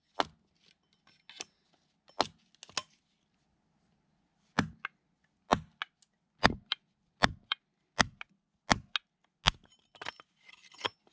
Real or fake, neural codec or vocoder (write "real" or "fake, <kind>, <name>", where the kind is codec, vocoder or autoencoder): real